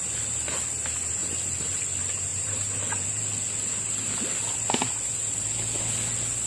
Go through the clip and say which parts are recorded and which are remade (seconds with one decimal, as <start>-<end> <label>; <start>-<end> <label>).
0.0-1.2 recorded; 1.2-1.8 remade; 1.8-2.3 recorded; 2.3-3.3 remade; 3.3-6.5 recorded